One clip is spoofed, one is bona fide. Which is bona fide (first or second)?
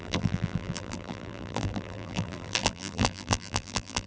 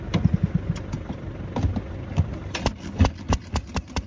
second